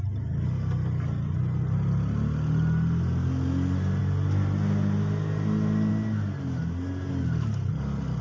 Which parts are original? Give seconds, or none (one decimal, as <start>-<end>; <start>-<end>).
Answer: 0.0-8.2